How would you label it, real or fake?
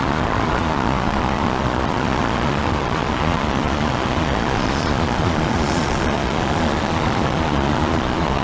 fake